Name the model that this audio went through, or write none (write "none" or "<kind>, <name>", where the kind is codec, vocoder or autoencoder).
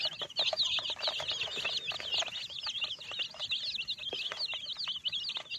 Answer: none